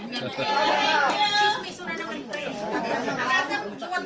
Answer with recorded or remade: recorded